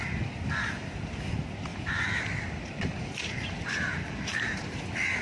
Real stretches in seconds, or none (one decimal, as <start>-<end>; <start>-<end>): 0.0-1.7; 4.8-5.2